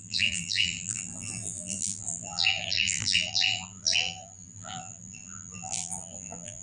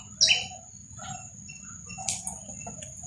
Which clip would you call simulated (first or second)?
first